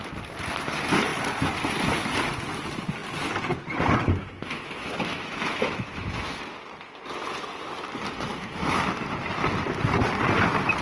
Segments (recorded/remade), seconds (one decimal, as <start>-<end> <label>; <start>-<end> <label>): 0.0-4.2 recorded; 4.2-6.4 remade; 6.4-8.3 recorded; 8.3-8.9 remade; 8.9-10.8 recorded